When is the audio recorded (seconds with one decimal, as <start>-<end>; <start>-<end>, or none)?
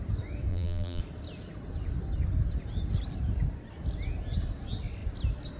0.0-0.5; 1.0-5.6